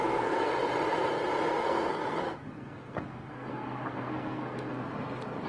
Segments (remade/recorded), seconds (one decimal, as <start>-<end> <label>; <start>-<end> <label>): 0.0-0.5 remade; 0.5-1.5 recorded; 1.5-4.8 remade; 4.8-5.5 recorded